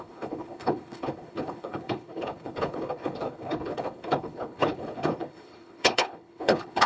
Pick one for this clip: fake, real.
fake